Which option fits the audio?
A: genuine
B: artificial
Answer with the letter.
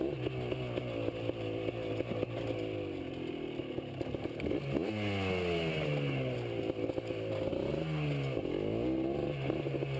A